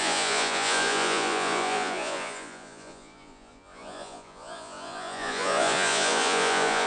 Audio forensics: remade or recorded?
remade